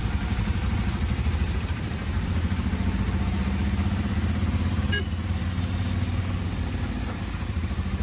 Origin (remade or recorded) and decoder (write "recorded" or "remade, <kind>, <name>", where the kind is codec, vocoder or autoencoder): recorded